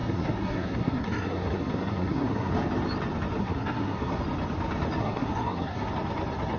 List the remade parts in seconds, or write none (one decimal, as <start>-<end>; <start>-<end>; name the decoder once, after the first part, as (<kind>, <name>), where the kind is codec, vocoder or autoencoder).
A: 0.0-2.5 (codec, SNAC); 3.4-4.2; 5.0-5.9